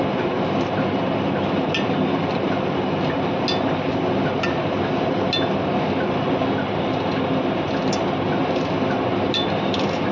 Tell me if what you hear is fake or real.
real